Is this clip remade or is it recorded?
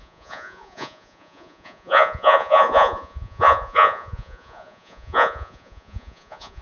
remade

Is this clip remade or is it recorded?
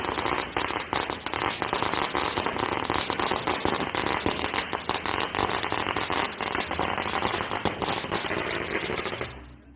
recorded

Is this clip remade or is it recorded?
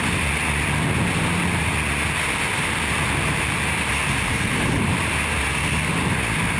recorded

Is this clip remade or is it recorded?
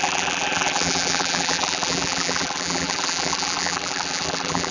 remade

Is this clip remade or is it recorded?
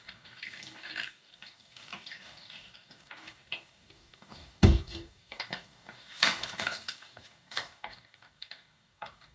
remade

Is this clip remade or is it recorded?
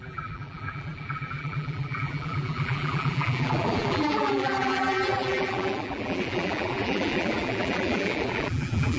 remade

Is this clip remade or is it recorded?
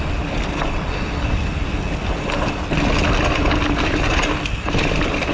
recorded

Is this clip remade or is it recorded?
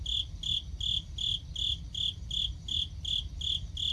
recorded